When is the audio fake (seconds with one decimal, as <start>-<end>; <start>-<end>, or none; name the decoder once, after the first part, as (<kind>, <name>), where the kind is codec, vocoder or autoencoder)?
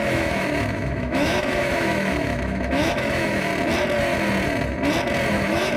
0.0-3.5 (autoencoder, DAC-VAE); 5.3-5.8